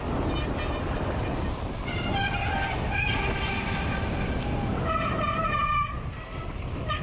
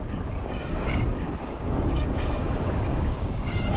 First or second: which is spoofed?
second